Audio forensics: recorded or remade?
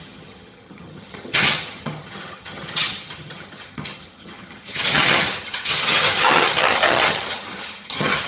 remade